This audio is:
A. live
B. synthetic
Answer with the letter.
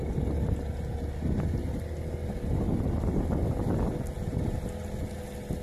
A